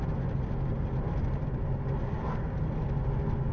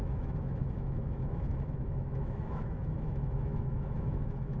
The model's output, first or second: second